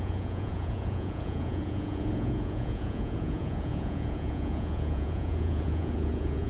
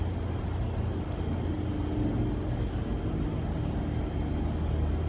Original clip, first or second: second